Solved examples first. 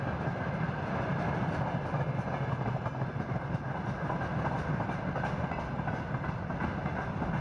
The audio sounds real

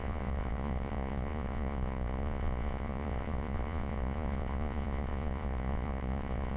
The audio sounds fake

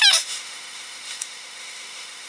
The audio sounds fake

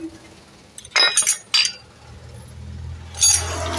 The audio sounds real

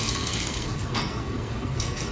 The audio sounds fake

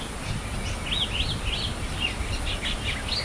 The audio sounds real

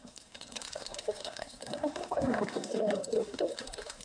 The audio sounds fake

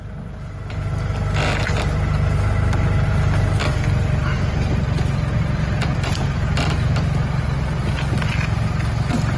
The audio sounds real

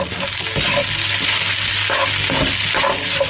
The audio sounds real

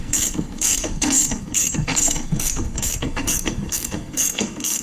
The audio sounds fake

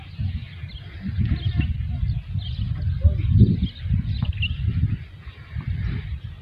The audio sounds real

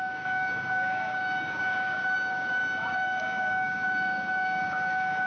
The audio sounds fake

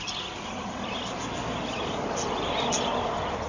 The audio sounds real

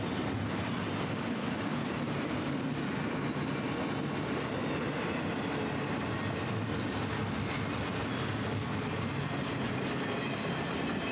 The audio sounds real